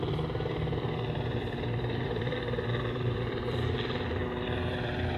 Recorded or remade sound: remade